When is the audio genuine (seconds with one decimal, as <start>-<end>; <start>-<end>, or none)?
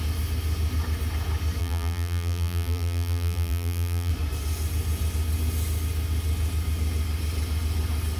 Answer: 0.0-1.6; 4.1-8.2